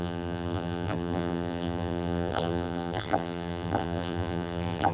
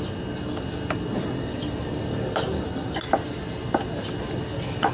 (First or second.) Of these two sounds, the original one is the second